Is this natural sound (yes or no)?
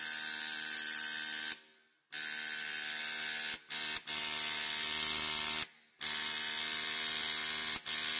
yes